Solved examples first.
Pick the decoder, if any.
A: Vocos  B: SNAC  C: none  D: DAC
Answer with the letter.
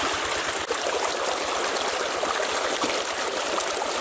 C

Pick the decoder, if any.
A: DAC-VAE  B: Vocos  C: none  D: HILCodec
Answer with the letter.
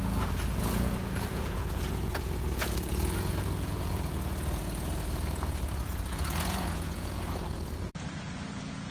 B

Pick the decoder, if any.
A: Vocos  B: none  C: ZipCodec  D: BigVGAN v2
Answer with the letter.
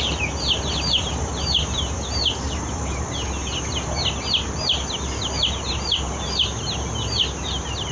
B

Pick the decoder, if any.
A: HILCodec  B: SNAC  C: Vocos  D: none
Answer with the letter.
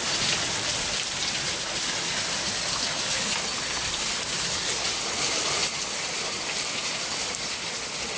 D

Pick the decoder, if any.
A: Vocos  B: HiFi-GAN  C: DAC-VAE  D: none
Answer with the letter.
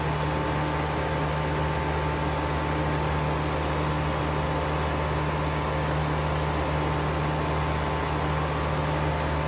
D